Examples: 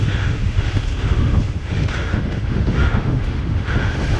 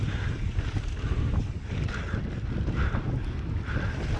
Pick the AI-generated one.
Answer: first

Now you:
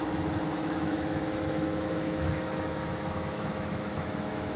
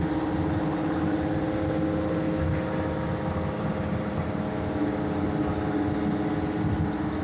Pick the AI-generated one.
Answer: first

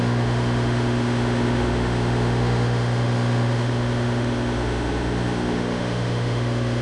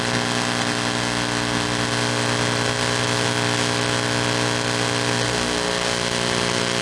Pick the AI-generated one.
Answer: first